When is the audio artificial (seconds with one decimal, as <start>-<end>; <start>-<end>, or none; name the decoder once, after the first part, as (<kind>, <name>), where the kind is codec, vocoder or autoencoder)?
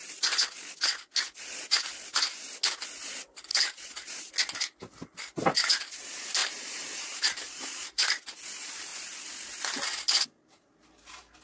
3.5-4.3 (vocoder, BigVGAN v2); 6.4-8.1